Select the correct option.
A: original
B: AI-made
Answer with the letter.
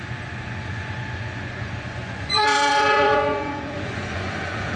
B